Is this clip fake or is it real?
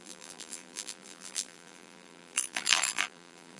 fake